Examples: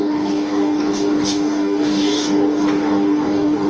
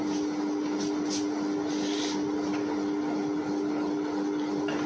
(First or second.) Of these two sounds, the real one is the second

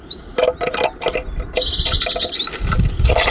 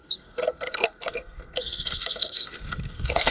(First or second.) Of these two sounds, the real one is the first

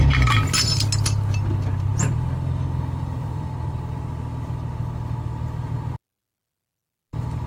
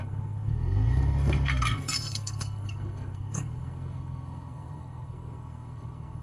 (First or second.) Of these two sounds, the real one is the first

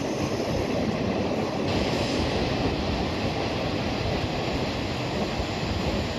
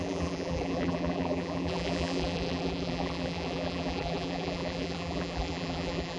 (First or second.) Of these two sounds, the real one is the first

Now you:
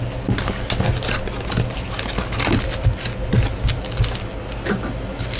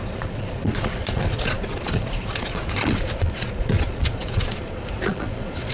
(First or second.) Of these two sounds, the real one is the first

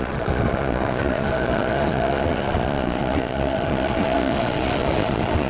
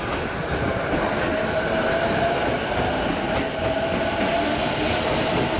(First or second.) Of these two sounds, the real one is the second